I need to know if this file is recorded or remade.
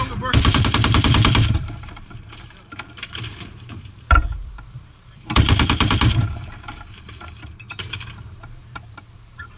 remade